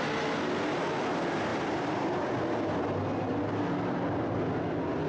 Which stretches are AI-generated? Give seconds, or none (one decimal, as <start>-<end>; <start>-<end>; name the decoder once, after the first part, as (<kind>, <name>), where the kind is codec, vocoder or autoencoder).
none